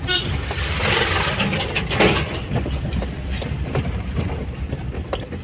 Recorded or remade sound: recorded